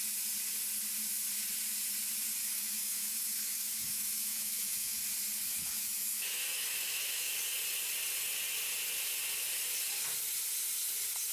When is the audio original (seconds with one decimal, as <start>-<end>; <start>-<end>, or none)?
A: 0.0-2.4; 5.0-5.4; 7.4-11.3